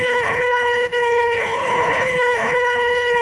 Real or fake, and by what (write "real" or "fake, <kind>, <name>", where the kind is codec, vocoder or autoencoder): fake, codec, HILCodec